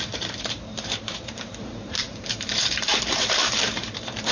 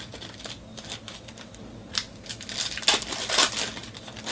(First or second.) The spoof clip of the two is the first